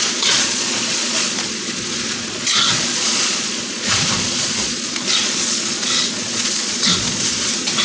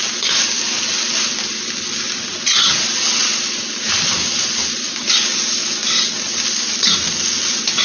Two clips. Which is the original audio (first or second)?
second